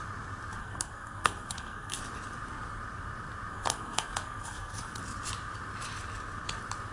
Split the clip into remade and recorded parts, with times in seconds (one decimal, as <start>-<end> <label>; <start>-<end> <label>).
0.0-0.6 recorded; 0.6-2.0 remade; 2.0-3.5 recorded; 3.5-5.0 remade; 5.0-6.9 recorded